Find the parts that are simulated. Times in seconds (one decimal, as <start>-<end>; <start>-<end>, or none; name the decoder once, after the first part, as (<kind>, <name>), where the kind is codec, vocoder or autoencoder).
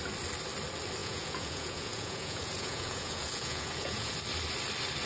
1.0-4.1 (vocoder, Vocos)